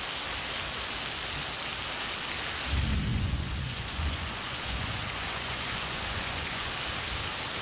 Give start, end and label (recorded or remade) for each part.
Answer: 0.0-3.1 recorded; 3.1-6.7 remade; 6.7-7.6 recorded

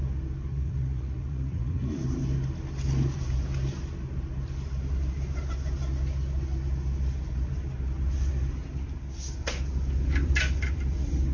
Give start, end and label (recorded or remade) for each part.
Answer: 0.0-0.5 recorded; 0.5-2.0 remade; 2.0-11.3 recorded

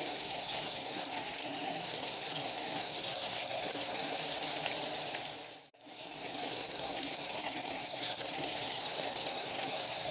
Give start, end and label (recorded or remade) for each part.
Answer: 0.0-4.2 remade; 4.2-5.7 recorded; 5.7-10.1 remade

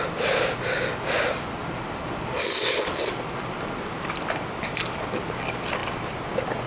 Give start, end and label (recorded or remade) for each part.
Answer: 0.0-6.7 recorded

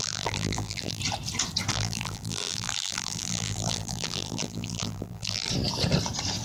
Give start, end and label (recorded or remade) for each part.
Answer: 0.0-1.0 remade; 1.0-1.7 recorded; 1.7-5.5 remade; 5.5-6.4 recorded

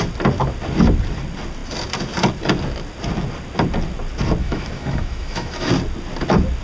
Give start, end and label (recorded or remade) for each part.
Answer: 0.0-4.4 recorded; 4.4-5.7 remade; 5.7-6.6 recorded